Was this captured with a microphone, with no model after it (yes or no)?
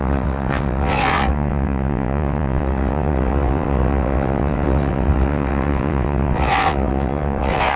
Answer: no